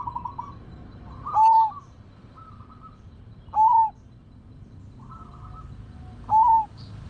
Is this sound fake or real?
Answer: real